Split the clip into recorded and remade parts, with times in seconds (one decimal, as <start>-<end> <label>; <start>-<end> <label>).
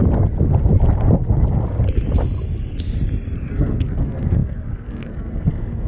0.0-3.5 recorded; 3.5-5.9 remade